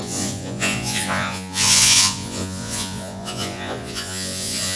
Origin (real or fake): fake